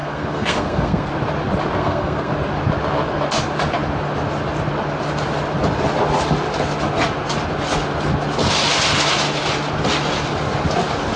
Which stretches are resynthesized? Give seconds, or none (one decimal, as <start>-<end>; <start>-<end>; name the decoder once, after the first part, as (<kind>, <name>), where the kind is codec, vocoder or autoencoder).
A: 0.0-1.1 (codec, SNAC); 1.8-2.3